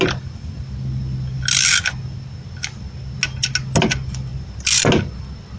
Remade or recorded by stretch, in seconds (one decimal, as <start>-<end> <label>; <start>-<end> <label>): 0.0-5.6 recorded